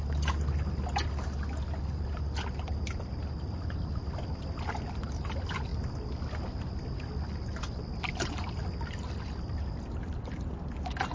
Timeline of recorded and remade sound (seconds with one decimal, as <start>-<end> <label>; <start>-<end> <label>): 0.0-11.1 recorded